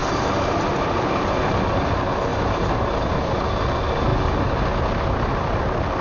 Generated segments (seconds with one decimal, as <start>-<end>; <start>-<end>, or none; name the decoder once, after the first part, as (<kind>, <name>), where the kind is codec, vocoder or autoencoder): 0.0-1.4 (vocoder, BigVGAN v2); 2.3-3.3